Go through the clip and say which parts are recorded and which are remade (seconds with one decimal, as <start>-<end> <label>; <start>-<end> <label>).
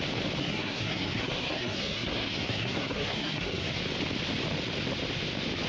0.0-0.4 recorded; 0.4-3.8 remade; 3.8-5.7 recorded